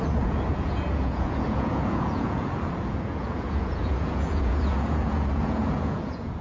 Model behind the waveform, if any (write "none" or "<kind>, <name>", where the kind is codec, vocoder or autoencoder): vocoder, Vocos